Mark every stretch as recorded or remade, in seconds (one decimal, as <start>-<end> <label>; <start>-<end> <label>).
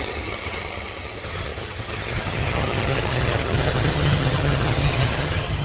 0.0-5.6 remade